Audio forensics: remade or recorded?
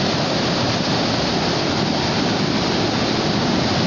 recorded